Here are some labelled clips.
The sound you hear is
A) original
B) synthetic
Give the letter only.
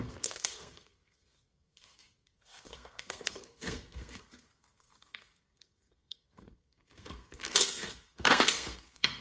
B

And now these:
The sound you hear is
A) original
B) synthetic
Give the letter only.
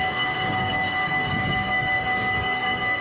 B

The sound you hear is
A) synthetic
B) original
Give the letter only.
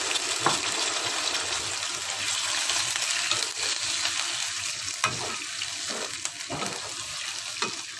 B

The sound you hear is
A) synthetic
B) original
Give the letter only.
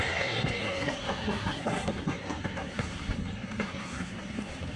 A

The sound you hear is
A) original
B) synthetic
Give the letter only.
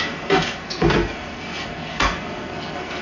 B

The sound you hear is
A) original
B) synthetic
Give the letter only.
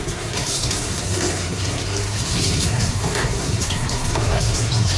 B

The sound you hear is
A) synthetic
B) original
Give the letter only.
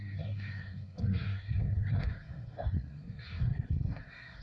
A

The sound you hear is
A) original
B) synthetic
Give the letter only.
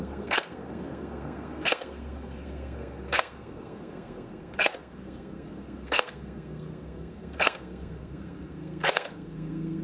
B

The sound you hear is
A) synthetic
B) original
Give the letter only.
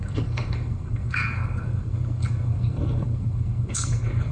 A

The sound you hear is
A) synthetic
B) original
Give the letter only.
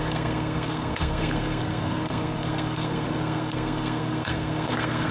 A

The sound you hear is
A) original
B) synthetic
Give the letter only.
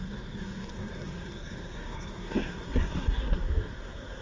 B